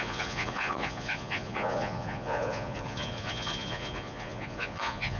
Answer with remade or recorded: remade